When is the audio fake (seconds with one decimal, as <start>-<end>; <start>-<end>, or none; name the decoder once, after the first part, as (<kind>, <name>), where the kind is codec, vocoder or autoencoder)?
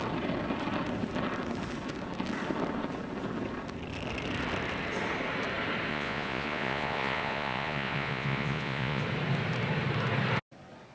5.9-9.0 (vocoder, Vocos)